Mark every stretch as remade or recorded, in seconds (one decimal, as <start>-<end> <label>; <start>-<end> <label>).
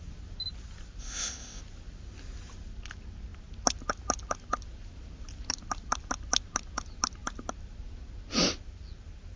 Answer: 0.0-1.0 recorded; 1.0-1.6 remade; 1.6-9.4 recorded